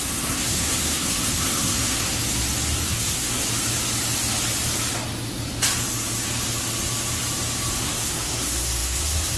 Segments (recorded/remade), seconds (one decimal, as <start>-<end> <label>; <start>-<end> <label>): 0.0-2.2 remade; 2.2-2.9 recorded; 2.9-3.4 remade; 3.4-7.8 recorded; 7.8-9.4 remade